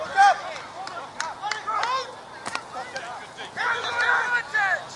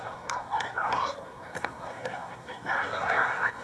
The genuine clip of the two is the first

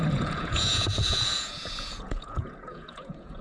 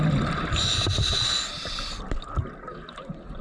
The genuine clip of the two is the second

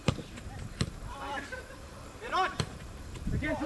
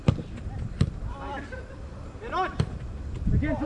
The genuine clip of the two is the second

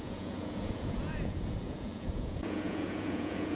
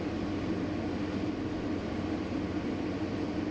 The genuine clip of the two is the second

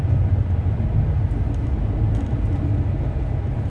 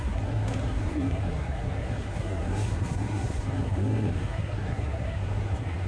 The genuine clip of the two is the first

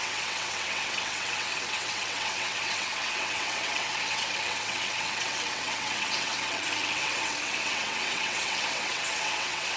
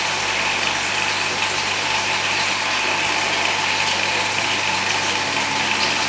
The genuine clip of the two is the second